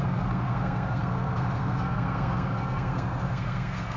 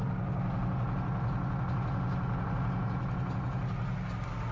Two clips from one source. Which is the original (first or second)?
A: second